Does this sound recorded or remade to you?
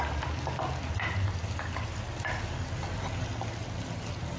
recorded